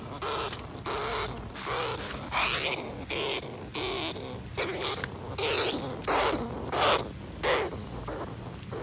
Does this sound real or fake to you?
real